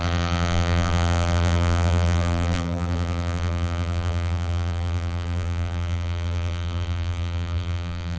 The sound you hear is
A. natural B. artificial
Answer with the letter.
B